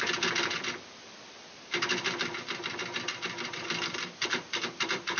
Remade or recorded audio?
remade